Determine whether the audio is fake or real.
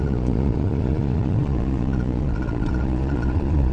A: fake